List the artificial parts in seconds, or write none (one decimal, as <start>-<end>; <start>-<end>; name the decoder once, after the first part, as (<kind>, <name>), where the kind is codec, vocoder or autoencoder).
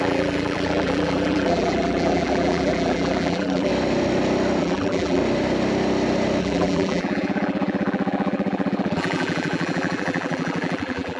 0.0-3.7 (vocoder, BigVGAN v2); 4.6-5.2; 6.4-11.2